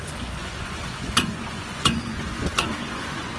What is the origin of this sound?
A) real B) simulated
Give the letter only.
B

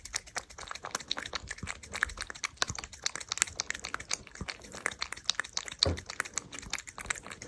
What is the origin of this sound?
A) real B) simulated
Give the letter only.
A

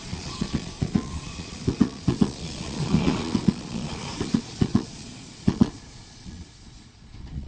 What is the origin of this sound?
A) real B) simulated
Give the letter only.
B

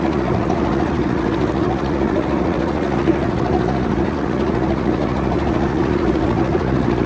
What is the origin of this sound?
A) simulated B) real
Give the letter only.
A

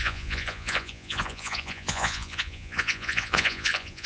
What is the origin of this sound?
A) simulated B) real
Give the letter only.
A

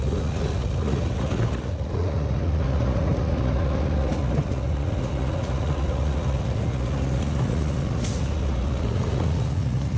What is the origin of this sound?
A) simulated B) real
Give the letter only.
A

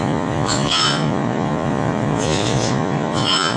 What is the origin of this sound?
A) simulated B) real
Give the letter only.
A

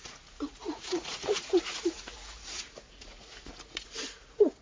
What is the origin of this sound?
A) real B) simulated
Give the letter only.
B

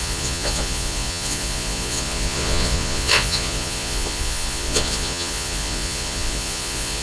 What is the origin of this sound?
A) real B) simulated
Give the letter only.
B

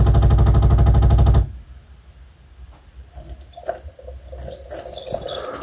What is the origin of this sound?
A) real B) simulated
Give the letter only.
A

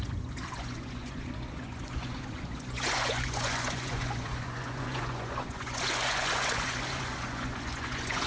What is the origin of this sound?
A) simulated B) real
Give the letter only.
A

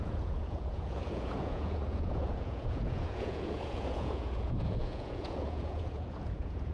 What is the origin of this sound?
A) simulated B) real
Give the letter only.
A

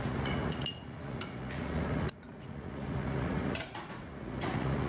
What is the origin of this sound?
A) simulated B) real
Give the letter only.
A